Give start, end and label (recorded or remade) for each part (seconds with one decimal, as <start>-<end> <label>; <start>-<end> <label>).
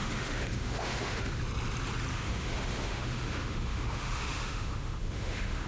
0.0-1.4 remade; 1.4-2.1 recorded; 2.1-5.7 remade